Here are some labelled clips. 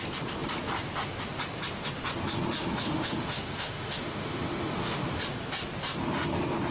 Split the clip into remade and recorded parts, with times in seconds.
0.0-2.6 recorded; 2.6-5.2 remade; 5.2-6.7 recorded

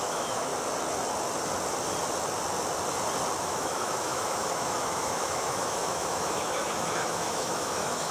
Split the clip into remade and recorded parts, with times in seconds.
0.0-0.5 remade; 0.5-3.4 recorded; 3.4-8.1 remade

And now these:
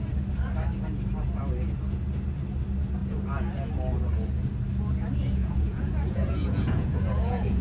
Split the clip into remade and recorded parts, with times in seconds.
0.0-5.4 recorded; 5.4-7.6 remade

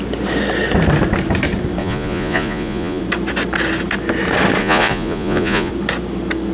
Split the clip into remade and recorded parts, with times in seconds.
0.0-1.8 recorded; 1.8-3.0 remade; 3.0-4.6 recorded; 4.6-5.7 remade; 5.7-6.5 recorded